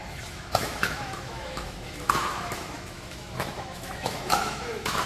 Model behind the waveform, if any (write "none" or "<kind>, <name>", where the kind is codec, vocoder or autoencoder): autoencoder, DAC-VAE